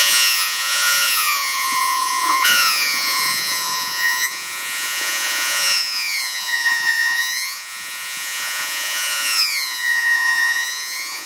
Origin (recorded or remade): remade